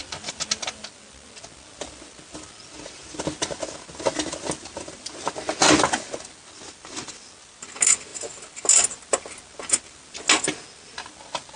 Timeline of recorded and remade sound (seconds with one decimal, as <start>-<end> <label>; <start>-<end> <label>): 0.0-11.6 recorded